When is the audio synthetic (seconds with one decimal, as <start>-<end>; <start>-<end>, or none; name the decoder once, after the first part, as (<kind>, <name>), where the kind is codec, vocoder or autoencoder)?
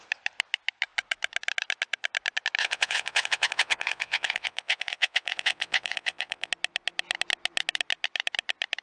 2.6-6.5 (vocoder, WaveNeXt)